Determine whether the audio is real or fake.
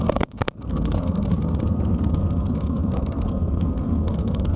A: fake